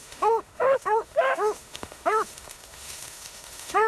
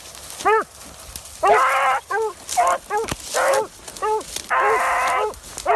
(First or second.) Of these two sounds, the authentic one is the second